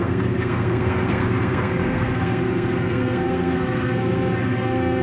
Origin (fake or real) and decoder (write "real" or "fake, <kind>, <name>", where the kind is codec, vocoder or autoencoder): fake, codec, SNAC